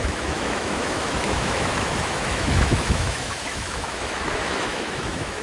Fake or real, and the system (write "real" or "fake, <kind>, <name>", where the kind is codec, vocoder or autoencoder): fake, autoencoder, DAC-VAE